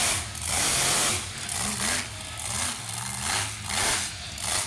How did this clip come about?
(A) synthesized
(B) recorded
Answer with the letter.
B